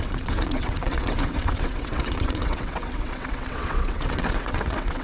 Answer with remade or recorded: remade